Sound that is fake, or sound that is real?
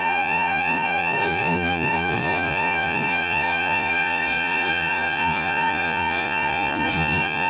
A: fake